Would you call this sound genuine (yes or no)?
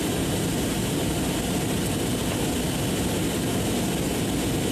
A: yes